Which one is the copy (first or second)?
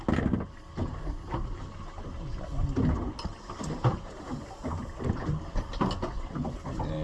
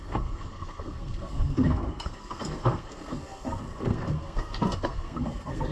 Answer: second